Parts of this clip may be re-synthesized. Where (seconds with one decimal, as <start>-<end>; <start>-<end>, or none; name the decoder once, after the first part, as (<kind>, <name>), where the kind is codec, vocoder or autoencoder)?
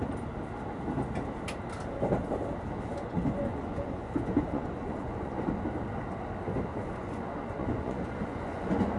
3.1-5.5 (vocoder, Vocos); 6.7-9.0